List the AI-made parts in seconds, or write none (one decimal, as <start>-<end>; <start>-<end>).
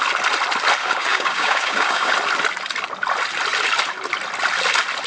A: 0.8-2.1